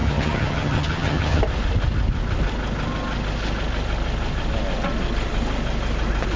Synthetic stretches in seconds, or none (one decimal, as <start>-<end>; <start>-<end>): 0.0-1.4